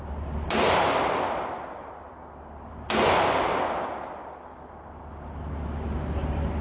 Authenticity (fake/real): real